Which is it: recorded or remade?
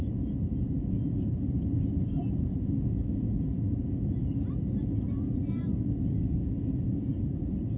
remade